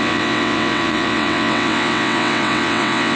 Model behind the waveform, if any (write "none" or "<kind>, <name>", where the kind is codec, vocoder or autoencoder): vocoder, WaveNeXt